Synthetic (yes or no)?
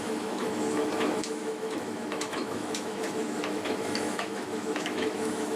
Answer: yes